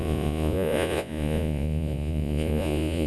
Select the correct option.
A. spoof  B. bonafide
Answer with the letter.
A